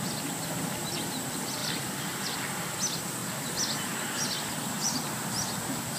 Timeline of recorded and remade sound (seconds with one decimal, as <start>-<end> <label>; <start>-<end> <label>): 0.0-1.6 recorded; 1.6-2.4 remade; 2.4-6.0 recorded